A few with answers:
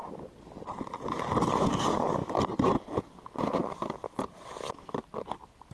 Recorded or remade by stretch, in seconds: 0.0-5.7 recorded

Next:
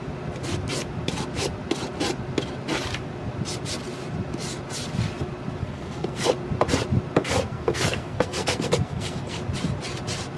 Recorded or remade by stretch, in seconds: 0.0-5.6 recorded; 5.6-6.3 remade; 6.3-7.2 recorded; 7.2-9.4 remade; 9.4-10.4 recorded

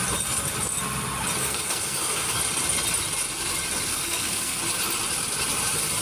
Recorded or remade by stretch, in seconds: 0.0-1.4 recorded; 1.4-2.4 remade; 2.4-3.9 recorded; 3.9-4.6 remade; 4.6-6.0 recorded

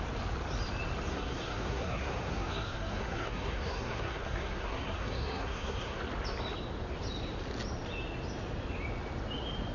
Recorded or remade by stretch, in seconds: 0.0-1.1 recorded; 1.1-6.0 remade; 6.0-9.7 recorded

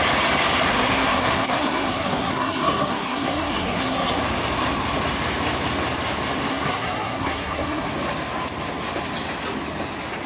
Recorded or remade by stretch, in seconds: 0.0-0.7 recorded; 0.7-4.2 remade; 4.2-6.5 recorded; 6.5-7.9 remade; 7.9-10.3 recorded

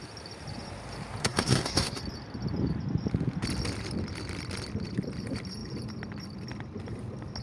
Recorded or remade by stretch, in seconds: 0.0-1.2 recorded; 1.2-2.0 remade; 2.0-7.4 recorded

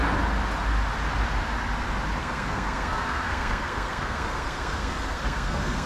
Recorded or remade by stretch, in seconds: 0.0-2.2 recorded; 2.2-5.9 remade